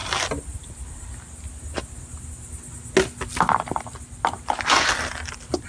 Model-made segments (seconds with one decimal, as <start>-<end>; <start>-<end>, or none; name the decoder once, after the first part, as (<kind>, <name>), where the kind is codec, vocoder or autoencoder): none